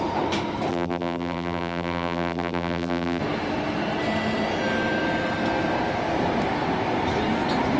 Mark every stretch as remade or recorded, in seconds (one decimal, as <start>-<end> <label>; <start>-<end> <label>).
0.0-0.7 recorded; 0.7-3.2 remade; 3.2-7.8 recorded